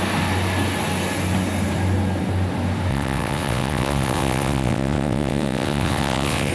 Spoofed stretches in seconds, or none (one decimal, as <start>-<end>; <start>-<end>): 2.9-6.5

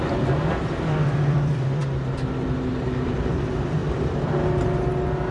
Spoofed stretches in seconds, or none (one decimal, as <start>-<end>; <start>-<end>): 0.0-1.8; 2.7-3.8

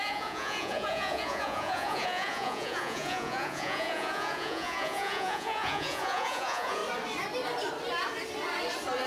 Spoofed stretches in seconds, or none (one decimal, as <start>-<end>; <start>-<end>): 0.0-6.8

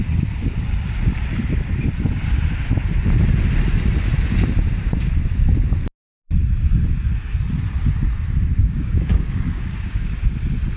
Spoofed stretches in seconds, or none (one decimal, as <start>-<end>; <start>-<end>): 8.6-10.2